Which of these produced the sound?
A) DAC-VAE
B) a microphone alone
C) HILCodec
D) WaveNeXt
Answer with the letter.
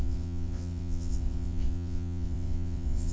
D